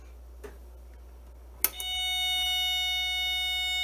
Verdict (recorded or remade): recorded